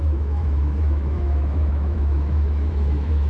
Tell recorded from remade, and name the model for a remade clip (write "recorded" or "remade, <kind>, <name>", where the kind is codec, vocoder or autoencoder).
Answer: remade, autoencoder, DAC-VAE